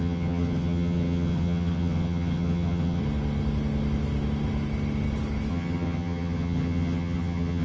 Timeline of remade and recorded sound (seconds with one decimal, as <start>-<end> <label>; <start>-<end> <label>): 0.0-3.0 remade; 3.0-5.5 recorded; 5.5-7.6 remade